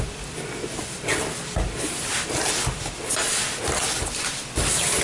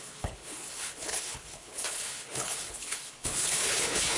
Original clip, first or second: first